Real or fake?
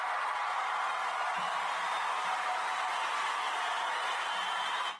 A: real